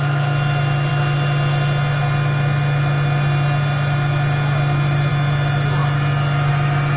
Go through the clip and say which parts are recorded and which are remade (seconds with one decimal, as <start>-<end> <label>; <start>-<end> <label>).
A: 0.0-7.0 recorded